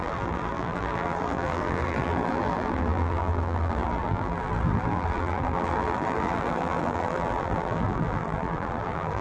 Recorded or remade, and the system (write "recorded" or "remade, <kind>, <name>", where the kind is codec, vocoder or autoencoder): remade, vocoder, BigVGAN v2